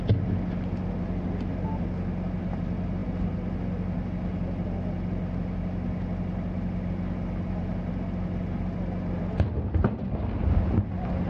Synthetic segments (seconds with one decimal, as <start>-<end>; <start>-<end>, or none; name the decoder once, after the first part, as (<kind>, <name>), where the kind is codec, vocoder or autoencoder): none